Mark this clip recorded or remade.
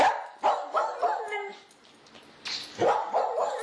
recorded